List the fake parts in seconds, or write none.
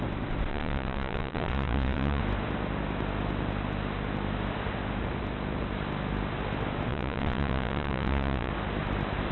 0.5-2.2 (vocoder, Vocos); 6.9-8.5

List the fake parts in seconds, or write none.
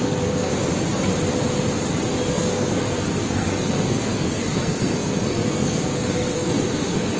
0.0-0.5 (codec, SNAC); 2.3-7.2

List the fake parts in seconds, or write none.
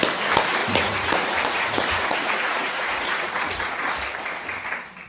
0.6-3.7 (vocoder, Vocos)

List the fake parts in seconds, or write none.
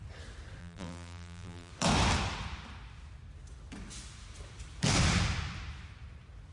0.6-1.7 (vocoder, BigVGAN v2)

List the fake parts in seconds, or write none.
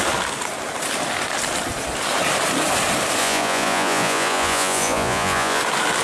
3.2-5.6 (vocoder, Vocos)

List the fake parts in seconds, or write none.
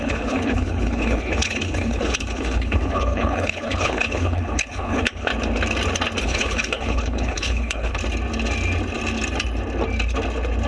0.0-5.3 (codec, HILCodec); 6.2-8.0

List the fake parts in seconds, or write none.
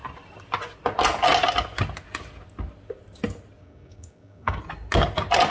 3.6-4.6 (codec, DAC)